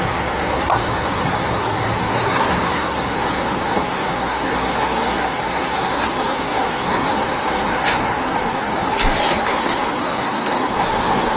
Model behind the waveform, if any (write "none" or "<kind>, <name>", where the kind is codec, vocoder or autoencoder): codec, SNAC